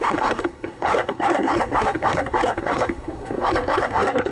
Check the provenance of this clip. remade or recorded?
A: remade